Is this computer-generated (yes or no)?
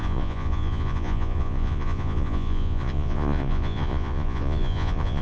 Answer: yes